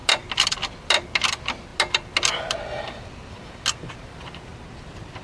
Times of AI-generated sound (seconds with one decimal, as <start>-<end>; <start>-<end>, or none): none